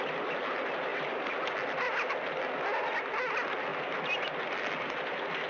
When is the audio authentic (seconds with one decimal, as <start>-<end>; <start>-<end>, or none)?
0.0-5.5